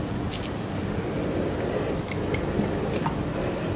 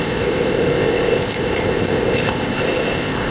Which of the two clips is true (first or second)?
first